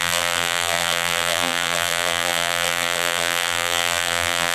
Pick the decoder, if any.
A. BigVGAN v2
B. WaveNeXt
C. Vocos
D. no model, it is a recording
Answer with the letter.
A